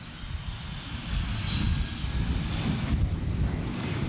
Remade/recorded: recorded